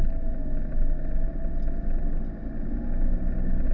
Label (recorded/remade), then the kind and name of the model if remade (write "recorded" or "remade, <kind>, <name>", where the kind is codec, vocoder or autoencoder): recorded